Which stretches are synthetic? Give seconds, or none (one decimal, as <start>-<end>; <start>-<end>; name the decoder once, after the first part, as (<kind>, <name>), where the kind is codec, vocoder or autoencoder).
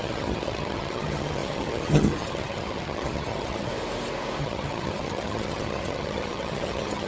0.0-3.7 (vocoder, HiFi-GAN); 4.4-7.1